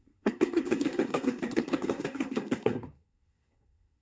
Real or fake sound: fake